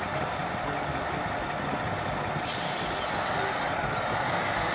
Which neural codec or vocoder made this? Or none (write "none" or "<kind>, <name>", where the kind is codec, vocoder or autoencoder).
none